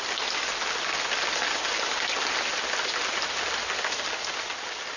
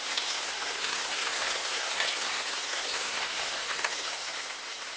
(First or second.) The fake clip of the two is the second